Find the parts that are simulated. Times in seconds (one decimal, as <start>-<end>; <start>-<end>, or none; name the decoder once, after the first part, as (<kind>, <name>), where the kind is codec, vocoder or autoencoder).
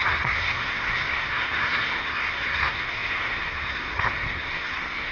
0.0-5.1 (codec, SNAC)